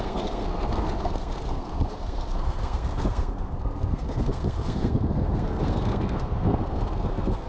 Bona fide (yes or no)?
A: no